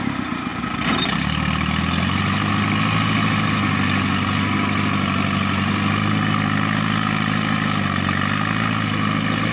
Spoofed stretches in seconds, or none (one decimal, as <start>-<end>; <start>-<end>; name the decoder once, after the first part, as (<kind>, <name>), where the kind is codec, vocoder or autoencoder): 0.5-2.5 (vocoder, BigVGAN v2)